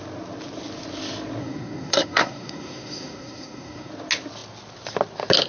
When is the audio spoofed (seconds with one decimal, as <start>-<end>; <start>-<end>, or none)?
1.4-3.9